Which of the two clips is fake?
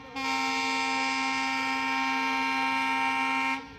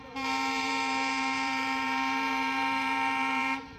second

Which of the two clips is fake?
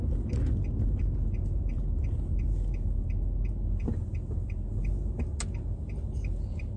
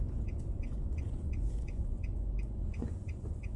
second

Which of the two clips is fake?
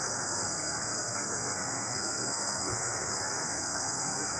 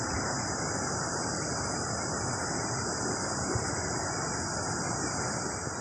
first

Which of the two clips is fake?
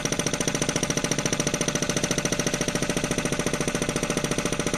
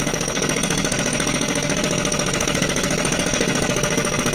second